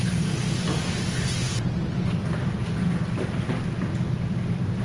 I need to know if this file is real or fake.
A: real